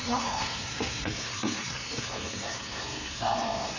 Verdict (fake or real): fake